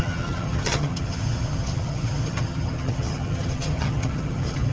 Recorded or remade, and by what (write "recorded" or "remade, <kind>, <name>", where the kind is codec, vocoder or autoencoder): remade, vocoder, HiFi-GAN